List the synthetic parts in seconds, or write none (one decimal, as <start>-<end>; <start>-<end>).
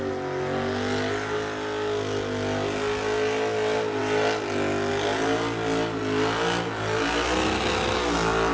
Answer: none